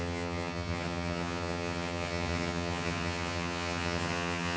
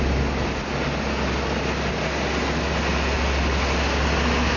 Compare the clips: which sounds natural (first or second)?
second